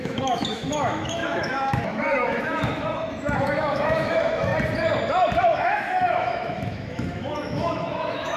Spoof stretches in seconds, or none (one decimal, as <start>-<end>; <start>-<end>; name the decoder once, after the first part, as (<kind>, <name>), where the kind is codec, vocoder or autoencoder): 0.0-4.5 (autoencoder, DAC-VAE); 5.4-8.4